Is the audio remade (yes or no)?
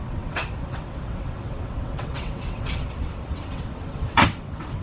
yes